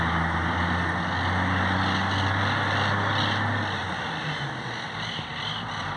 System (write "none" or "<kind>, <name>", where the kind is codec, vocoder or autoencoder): none